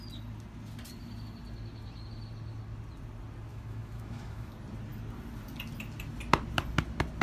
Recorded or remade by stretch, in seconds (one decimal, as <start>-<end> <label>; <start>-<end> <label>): 0.0-3.5 recorded; 3.5-4.5 remade; 4.5-7.2 recorded

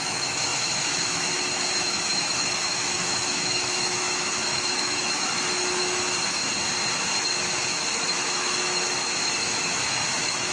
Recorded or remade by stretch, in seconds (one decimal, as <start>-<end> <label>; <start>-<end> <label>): 0.0-6.4 remade; 6.4-7.2 recorded; 7.2-10.5 remade

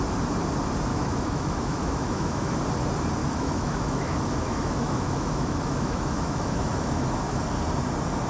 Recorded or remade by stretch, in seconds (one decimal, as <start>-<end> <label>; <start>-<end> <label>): 0.0-0.9 recorded; 0.9-2.5 remade; 2.5-3.2 recorded; 3.2-7.4 remade; 7.4-8.3 recorded

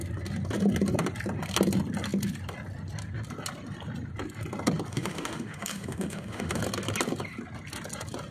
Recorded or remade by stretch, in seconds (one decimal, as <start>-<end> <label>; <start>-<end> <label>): 0.0-4.9 recorded; 4.9-6.6 remade; 6.6-8.3 recorded

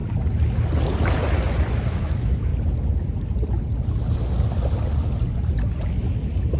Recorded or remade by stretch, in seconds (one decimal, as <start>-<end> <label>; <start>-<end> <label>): 0.0-1.8 recorded; 1.8-2.5 remade; 2.5-6.6 recorded

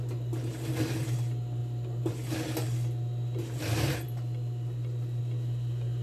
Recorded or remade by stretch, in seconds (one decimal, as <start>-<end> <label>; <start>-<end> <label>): 0.0-6.0 recorded

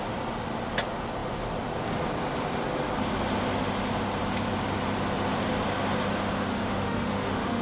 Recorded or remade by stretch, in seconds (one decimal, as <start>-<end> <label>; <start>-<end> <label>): 0.0-6.5 recorded; 6.5-7.6 remade